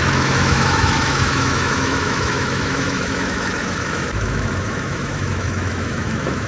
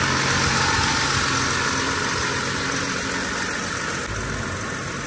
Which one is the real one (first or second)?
second